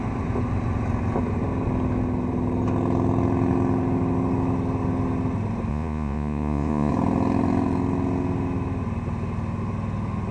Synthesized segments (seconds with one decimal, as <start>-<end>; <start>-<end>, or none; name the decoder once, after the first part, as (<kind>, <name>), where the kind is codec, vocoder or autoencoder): 5.7-6.9 (vocoder, Vocos)